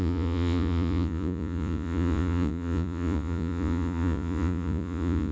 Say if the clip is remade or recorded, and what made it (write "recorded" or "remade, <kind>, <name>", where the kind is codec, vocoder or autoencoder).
remade, vocoder, Vocos